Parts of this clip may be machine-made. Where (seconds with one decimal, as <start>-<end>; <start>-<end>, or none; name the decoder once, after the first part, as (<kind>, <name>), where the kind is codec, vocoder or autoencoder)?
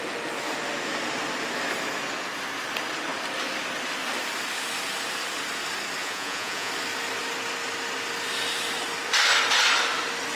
6.0-6.7 (vocoder, Vocos)